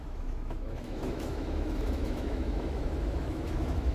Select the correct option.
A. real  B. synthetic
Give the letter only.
B